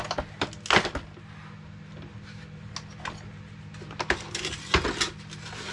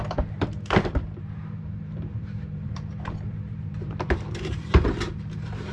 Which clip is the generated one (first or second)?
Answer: second